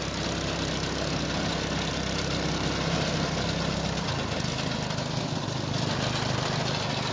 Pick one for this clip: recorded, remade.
recorded